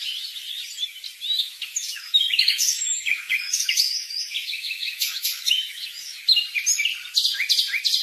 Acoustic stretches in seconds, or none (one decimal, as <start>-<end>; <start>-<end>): 0.0-1.4; 6.2-8.0